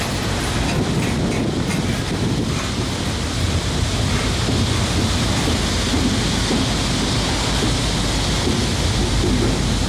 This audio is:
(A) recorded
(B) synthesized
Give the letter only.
A